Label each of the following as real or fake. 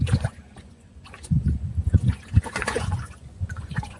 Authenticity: fake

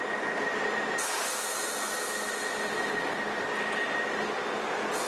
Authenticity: real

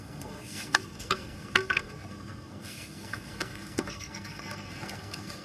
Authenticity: fake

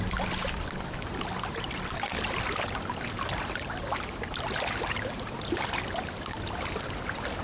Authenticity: real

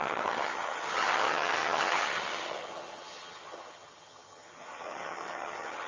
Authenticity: fake